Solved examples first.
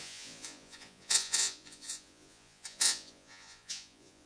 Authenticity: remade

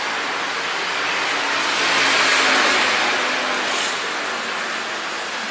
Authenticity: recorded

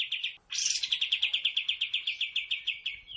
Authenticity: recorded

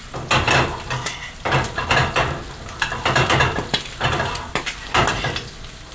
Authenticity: recorded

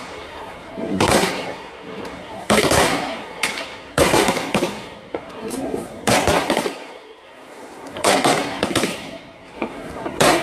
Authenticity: remade